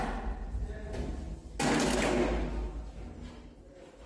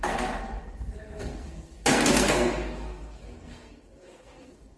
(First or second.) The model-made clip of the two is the second